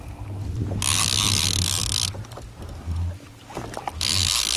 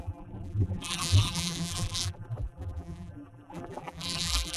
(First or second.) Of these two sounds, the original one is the first